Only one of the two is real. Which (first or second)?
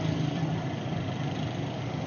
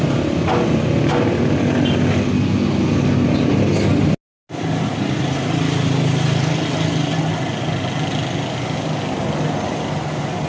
second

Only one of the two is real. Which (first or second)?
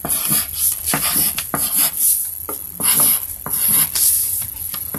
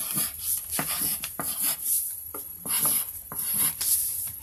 first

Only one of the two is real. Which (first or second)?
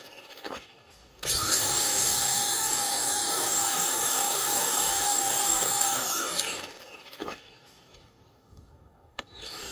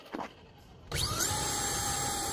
second